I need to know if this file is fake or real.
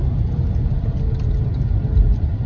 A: real